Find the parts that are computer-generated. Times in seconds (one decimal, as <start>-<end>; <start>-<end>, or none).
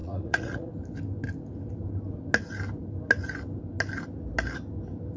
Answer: 0.0-0.7